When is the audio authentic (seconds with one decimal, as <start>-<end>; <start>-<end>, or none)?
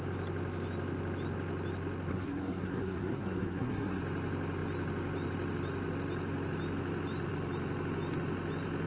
0.0-2.1; 4.0-8.9